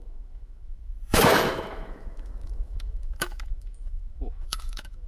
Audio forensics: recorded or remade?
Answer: remade